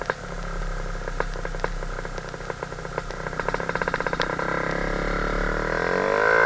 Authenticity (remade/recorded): recorded